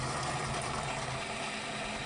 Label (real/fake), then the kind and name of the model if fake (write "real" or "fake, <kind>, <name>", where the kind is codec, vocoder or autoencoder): real